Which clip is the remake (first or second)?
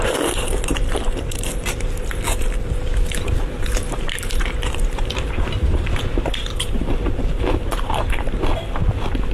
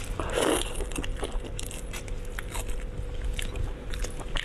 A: first